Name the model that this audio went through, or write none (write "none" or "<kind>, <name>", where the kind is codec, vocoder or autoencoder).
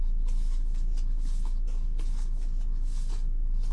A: none